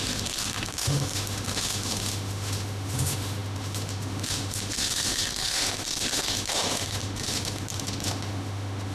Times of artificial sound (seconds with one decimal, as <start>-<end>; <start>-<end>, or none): 0.0-8.9